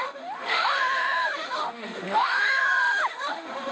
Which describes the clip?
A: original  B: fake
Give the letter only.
B